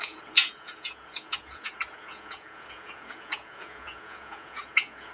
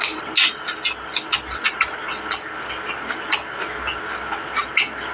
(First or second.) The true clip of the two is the second